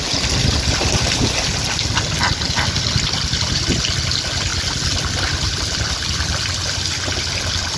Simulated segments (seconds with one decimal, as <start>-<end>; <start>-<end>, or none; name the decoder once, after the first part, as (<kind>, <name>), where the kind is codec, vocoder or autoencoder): none